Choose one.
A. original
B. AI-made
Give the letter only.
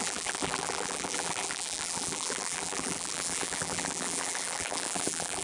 B